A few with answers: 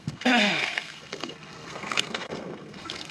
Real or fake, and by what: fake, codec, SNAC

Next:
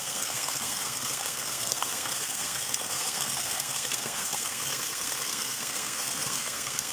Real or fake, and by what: fake, codec, SNAC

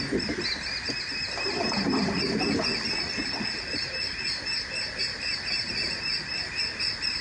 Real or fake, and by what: real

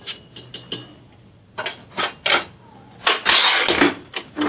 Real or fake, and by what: real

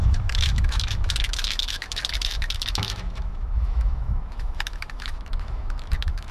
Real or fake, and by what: fake, autoencoder, DAC-VAE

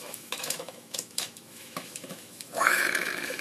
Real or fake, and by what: fake, autoencoder, DAC-VAE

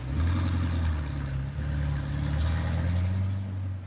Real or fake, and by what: real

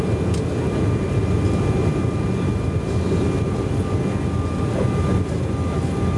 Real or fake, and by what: real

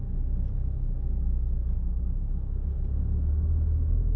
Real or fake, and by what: real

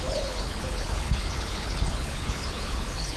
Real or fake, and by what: fake, codec, HILCodec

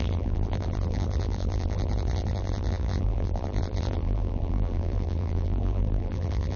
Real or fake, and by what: fake, vocoder, BigVGAN v2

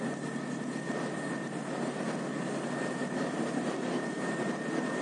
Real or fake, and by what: real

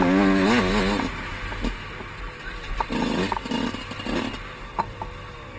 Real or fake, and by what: real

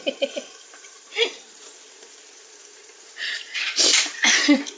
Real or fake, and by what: fake, vocoder, BigVGAN v2